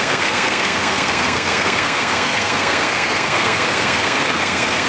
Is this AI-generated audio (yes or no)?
yes